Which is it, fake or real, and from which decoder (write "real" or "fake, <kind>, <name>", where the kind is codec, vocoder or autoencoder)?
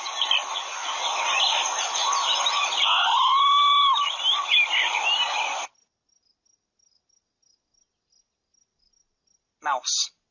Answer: real